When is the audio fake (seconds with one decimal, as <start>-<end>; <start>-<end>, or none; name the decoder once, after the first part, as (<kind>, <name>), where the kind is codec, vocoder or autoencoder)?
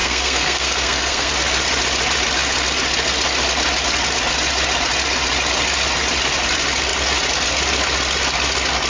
0.0-1.3 (codec, SNAC)